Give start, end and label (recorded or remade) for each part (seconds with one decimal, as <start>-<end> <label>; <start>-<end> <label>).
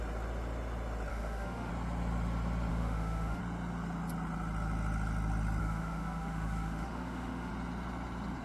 0.0-1.1 recorded; 1.1-1.7 remade; 1.7-2.7 recorded; 2.7-3.4 remade; 3.4-5.6 recorded; 5.6-7.5 remade; 7.5-8.4 recorded